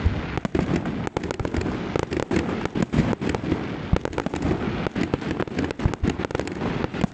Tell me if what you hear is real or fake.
real